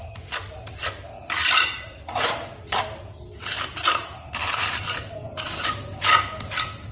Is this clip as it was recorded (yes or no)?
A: no